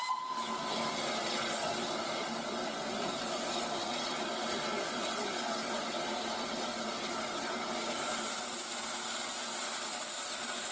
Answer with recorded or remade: recorded